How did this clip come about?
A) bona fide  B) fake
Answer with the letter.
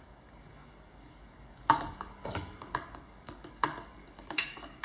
B